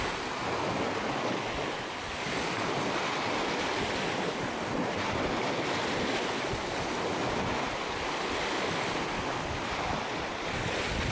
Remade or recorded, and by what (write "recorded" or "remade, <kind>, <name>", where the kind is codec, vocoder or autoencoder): recorded